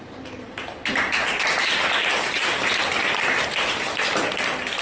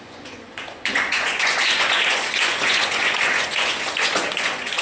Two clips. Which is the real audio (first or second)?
first